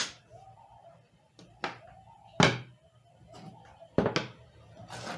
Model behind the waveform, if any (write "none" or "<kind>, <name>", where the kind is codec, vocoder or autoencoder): none